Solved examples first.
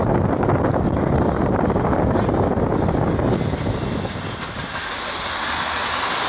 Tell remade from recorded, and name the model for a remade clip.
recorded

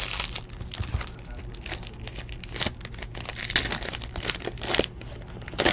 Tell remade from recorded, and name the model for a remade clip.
recorded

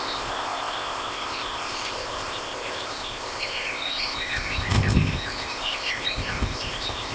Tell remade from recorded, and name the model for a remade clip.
remade, codec, ZipCodec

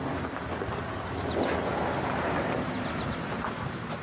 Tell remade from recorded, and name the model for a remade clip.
recorded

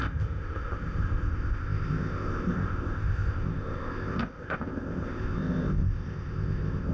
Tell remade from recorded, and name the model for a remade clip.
remade, codec, ZipCodec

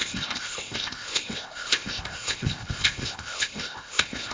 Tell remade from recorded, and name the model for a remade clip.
remade, codec, ZipCodec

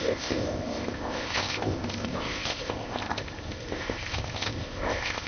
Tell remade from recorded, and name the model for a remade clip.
remade, codec, ZipCodec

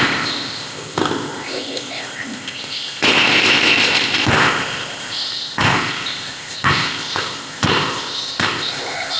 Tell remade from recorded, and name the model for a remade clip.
remade, codec, ZipCodec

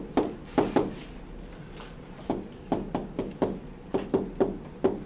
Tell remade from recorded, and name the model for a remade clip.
recorded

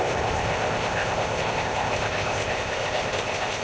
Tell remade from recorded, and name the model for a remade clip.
remade, codec, ZipCodec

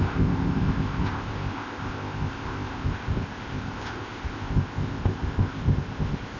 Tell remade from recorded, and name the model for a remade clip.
remade, codec, ZipCodec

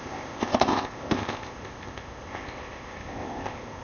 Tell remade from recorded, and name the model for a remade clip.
remade, codec, ZipCodec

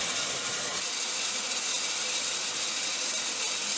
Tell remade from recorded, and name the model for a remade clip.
recorded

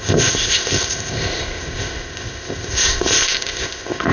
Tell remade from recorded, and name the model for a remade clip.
remade, codec, ZipCodec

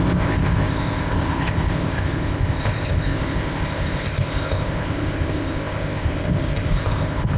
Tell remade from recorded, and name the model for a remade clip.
remade, codec, ZipCodec